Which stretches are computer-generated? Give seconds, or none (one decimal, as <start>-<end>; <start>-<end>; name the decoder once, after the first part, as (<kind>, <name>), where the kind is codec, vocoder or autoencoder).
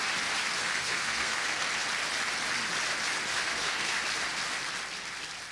0.6-1.7 (codec, SNAC); 3.3-4.0